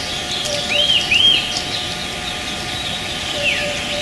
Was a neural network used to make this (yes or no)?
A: no